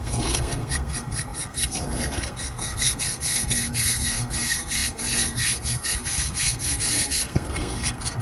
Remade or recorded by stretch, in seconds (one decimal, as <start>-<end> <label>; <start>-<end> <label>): 0.0-8.2 remade